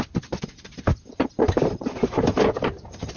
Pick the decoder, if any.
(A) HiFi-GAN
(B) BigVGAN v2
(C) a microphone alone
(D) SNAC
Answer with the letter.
B